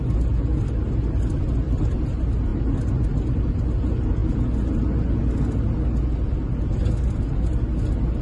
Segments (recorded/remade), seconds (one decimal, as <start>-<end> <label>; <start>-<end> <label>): 0.0-8.2 recorded